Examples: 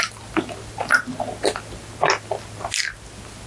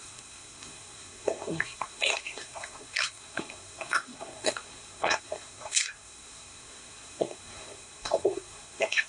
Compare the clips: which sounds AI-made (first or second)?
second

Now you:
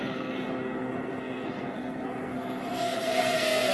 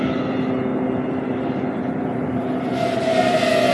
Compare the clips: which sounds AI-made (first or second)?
first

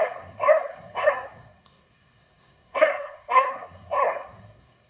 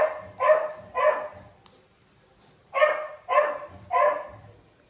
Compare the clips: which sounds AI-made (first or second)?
first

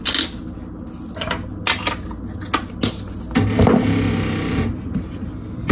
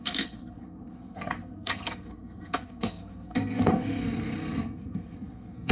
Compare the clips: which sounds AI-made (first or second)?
second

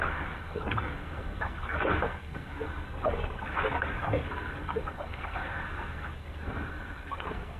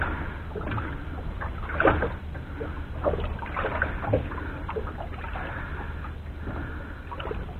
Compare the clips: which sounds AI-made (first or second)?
first